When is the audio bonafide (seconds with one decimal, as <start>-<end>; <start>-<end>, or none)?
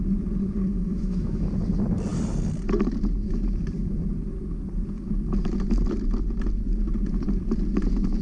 0.0-0.7; 1.5-8.2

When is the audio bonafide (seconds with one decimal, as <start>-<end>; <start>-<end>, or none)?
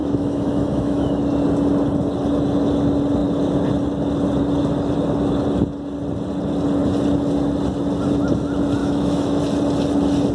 1.2-8.8; 9.4-10.3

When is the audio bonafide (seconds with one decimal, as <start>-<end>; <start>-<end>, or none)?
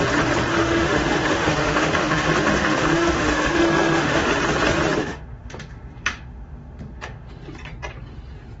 0.0-0.5; 4.3-5.0; 7.3-8.6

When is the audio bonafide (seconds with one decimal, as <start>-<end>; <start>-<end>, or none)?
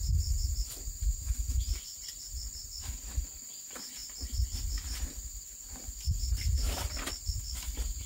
0.0-8.1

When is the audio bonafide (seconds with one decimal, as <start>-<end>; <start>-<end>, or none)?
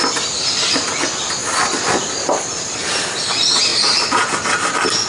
0.0-5.1